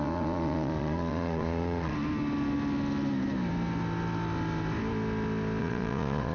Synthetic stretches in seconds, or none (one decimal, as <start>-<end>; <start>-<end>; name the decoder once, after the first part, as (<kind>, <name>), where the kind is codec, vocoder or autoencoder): 0.0-1.9 (vocoder, Vocos); 5.6-6.3